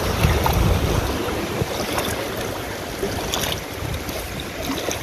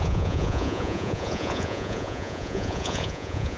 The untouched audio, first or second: first